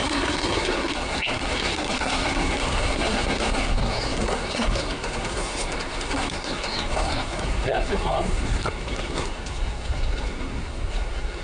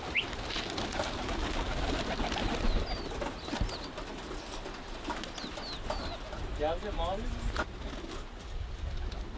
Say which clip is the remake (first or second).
first